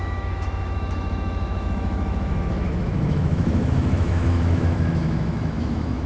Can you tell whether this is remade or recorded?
remade